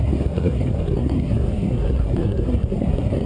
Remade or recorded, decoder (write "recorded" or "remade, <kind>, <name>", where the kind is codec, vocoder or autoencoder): remade, codec, SNAC